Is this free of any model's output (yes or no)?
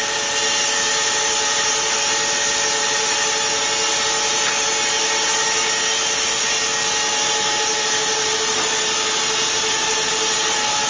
yes